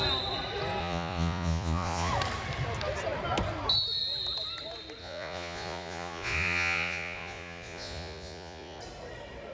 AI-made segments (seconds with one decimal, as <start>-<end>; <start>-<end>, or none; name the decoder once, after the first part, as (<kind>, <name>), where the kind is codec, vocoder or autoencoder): 0.8-2.1 (vocoder, Vocos); 5.0-8.8